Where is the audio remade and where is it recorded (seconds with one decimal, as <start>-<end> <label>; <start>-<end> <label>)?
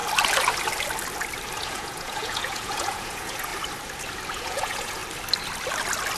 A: 0.0-1.6 recorded; 1.6-3.5 remade; 3.5-4.3 recorded; 4.3-5.0 remade; 5.0-6.2 recorded